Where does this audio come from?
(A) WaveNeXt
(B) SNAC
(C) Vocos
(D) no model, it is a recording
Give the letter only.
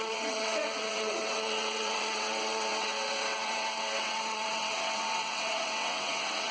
A